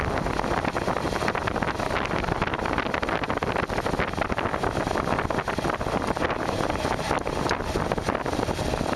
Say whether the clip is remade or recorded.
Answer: recorded